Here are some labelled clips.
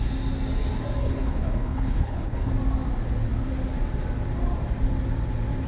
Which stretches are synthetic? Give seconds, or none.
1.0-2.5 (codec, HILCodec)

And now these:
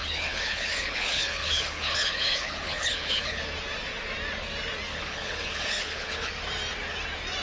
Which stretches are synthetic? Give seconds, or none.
0.0-3.4 (codec, HILCodec); 4.9-6.3

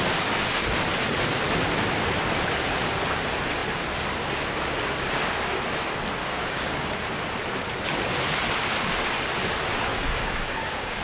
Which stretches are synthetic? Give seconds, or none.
6.2-7.1 (codec, DAC); 9.9-11.0

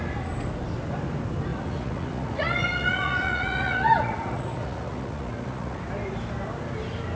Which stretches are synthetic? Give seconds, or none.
1.5-5.8 (vocoder, Vocos)

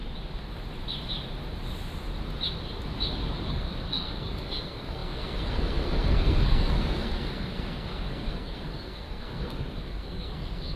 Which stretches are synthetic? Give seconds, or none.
3.5-10.8 (codec, SNAC)

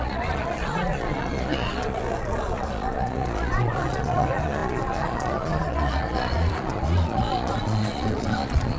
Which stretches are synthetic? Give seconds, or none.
0.0-8.8 (vocoder, Vocos)

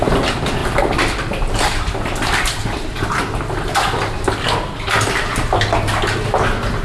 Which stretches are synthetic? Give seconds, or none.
0.6-1.7 (vocoder, BigVGAN v2)

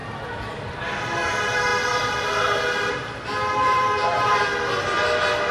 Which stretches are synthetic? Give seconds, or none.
none